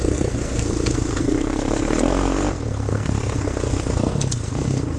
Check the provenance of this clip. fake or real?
fake